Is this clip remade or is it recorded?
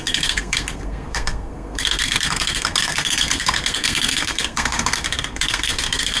remade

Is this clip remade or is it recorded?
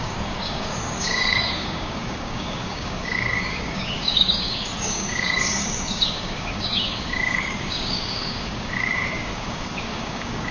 remade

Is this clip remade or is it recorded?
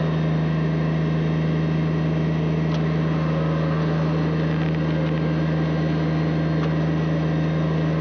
recorded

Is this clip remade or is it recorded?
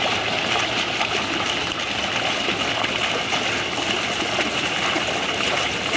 recorded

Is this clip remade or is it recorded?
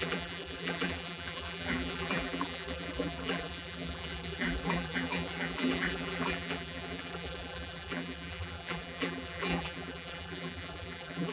remade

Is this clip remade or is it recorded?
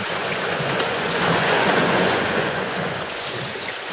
remade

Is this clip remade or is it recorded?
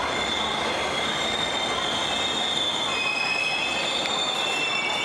recorded